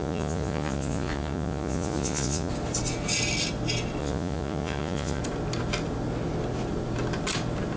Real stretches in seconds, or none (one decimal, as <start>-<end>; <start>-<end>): 2.5-4.0; 5.2-7.8